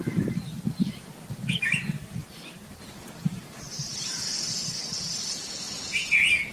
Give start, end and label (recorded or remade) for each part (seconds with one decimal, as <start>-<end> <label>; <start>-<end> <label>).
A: 0.0-0.5 remade; 0.5-1.6 recorded; 1.6-6.5 remade